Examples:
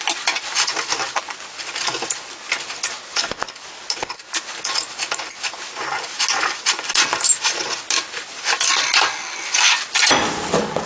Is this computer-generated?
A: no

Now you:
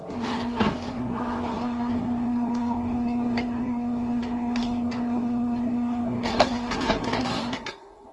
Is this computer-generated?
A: yes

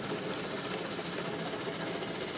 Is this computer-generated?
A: no